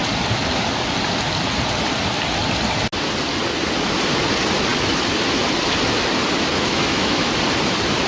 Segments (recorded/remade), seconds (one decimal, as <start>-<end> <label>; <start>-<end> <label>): 0.0-6.7 recorded; 6.7-7.3 remade; 7.3-8.1 recorded